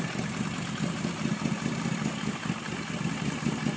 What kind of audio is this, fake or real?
real